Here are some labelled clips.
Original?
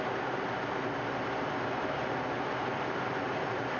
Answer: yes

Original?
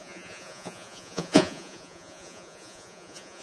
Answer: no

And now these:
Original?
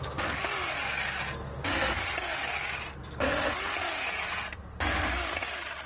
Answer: yes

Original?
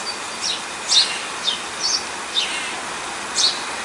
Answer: yes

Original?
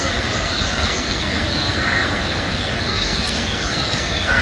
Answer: no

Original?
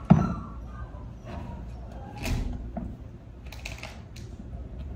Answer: yes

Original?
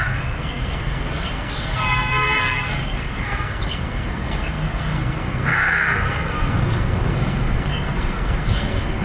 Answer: no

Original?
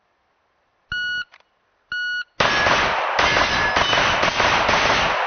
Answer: yes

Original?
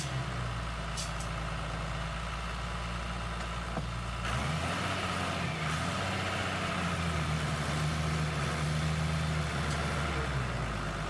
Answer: yes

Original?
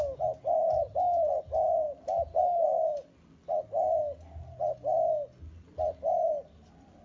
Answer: yes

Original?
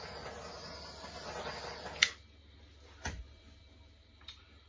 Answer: yes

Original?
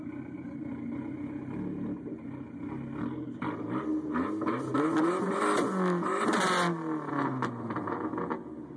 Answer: yes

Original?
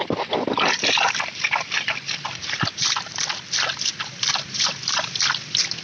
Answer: no